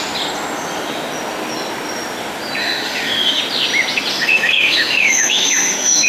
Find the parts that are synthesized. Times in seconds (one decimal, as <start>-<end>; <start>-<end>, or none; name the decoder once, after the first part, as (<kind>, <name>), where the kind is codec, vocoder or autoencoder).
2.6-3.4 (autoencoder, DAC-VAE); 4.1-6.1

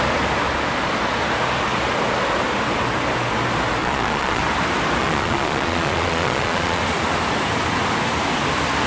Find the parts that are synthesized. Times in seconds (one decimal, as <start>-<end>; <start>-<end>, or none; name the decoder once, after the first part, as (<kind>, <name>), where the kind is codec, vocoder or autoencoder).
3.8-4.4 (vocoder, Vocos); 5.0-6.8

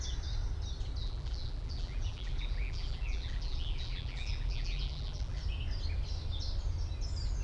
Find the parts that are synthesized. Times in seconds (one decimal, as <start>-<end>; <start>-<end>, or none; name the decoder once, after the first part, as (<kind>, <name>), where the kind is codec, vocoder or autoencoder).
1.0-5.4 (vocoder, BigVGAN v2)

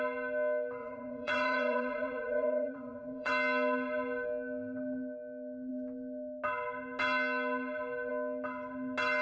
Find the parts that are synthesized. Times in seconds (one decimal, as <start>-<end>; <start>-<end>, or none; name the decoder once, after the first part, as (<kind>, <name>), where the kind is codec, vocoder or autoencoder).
0.8-3.3 (vocoder, Vocos)

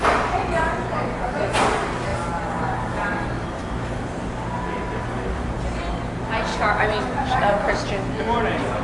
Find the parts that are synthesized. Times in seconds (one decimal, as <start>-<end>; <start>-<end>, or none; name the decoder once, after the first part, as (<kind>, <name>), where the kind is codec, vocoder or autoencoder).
none

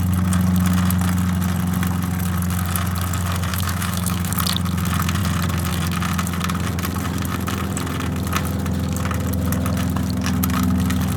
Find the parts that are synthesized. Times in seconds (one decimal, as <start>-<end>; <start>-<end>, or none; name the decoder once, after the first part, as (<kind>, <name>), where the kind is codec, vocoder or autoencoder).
3.5-4.3 (autoencoder, DAC-VAE)

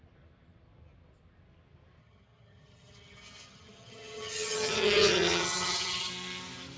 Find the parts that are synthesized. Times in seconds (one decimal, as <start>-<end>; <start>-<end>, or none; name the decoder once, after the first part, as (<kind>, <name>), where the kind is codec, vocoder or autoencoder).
2.0-6.1 (vocoder, HiFi-GAN)

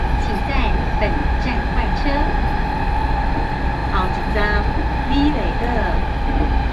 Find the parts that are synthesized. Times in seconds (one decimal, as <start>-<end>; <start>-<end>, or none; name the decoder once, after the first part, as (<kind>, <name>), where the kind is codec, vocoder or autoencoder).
none